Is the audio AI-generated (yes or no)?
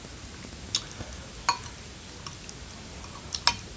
no